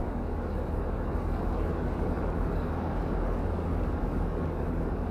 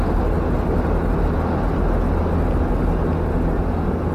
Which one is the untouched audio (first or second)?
second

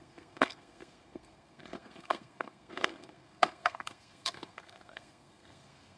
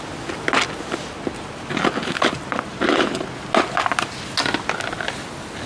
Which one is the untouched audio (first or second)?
second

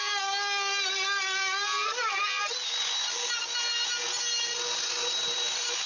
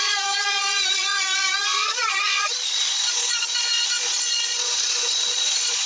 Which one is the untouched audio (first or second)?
first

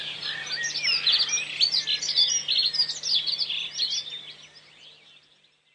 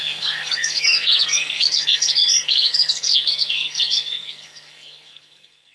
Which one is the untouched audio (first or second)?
first